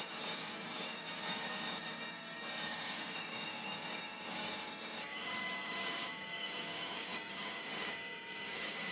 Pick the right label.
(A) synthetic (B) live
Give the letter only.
A